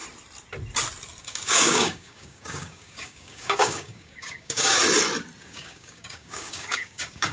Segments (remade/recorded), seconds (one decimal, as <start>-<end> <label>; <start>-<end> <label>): 0.0-1.2 recorded; 1.2-4.8 remade; 4.8-5.4 recorded; 5.4-7.3 remade